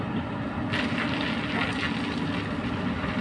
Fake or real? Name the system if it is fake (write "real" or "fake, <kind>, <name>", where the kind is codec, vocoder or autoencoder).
real